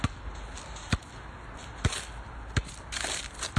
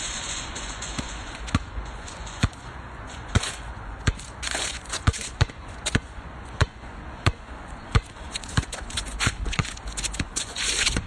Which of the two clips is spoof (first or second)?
second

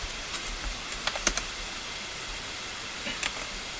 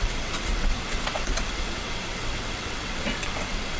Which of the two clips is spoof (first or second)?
second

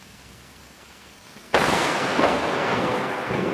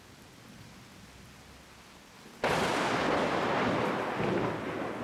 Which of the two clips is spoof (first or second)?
first